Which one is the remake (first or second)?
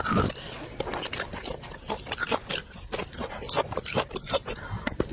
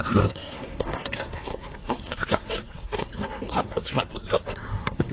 second